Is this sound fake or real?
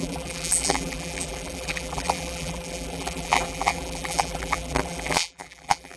fake